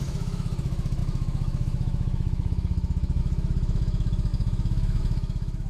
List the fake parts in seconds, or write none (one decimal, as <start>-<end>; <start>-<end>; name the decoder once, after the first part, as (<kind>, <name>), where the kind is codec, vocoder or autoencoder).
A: 0.0-5.7 (autoencoder, DAC-VAE)